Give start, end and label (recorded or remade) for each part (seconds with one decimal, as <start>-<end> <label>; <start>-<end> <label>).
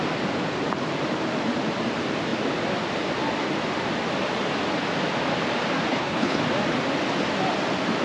0.0-5.9 recorded; 5.9-6.4 remade; 6.4-8.0 recorded